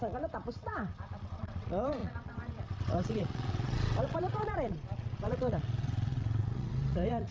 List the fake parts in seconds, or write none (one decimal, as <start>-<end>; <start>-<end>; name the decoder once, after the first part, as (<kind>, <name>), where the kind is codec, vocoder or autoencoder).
0.0-7.3 (vocoder, WaveNeXt)